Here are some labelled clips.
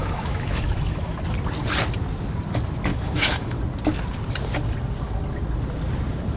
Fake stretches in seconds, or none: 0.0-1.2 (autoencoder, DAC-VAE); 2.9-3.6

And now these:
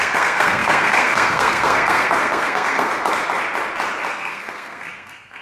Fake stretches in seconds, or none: 0.0-2.9 (codec, SNAC); 4.1-5.4

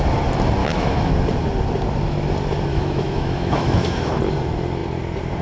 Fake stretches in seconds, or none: 0.6-1.1 (autoencoder, DAC-VAE); 2.7-4.1

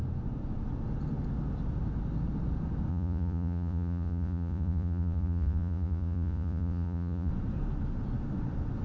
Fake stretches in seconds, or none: 2.9-7.3 (vocoder, Vocos)

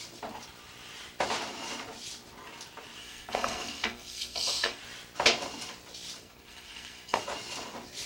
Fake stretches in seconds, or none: 3.0-4.8 (codec, SNAC); 6.2-7.2

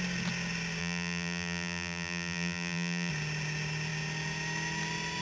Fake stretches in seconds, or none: 0.8-3.1 (vocoder, BigVGAN v2)

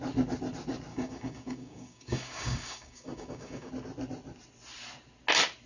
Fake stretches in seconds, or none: 0.9-3.7 (codec, DAC)